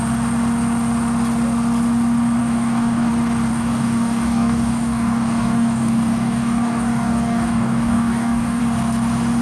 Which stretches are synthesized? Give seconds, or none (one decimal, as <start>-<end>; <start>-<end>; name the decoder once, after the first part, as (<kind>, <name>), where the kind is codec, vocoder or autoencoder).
2.4-3.1 (codec, DAC); 3.5-8.6